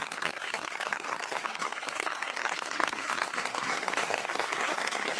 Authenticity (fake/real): fake